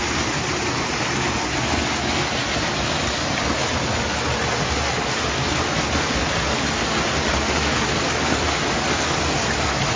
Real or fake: real